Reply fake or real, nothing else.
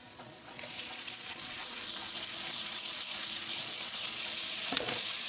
fake